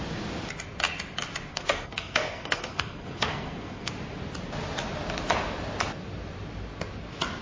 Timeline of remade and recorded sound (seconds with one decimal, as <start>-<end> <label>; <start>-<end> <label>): 0.0-1.5 recorded; 1.5-3.9 remade; 3.9-7.4 recorded